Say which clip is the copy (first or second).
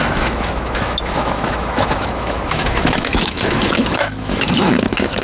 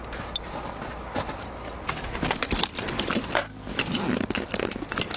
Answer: first